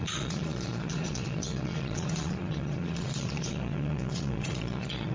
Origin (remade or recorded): remade